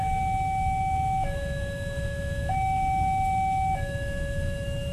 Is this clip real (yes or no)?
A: no